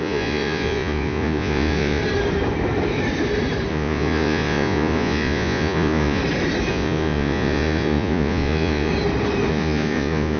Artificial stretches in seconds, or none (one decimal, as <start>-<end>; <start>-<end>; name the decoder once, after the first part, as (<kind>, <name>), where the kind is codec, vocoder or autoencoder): 0.0-2.0 (vocoder, Vocos); 3.7-6.2; 6.7-8.9; 9.5-10.4